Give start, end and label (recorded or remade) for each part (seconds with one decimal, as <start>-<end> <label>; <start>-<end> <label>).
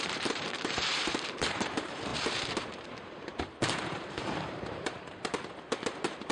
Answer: 0.0-3.3 remade; 3.3-3.8 recorded; 3.8-6.3 remade